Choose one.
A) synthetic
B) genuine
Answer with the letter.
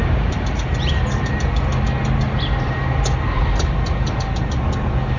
B